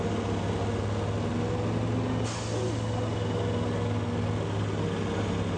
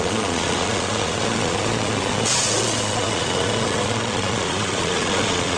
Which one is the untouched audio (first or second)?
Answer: first